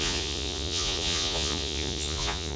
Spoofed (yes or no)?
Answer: yes